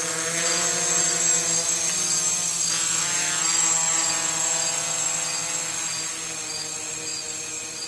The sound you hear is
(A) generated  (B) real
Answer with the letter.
B